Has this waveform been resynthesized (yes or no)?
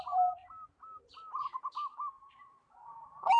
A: yes